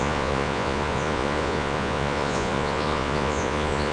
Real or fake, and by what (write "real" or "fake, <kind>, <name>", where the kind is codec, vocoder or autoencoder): fake, vocoder, Vocos